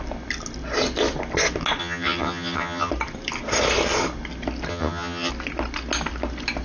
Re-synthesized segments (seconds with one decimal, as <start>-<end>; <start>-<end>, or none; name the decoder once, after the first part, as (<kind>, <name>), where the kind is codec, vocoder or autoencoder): 1.8-2.9 (vocoder, HiFi-GAN); 4.7-5.3